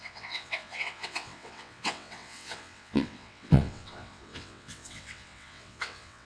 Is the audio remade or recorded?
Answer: remade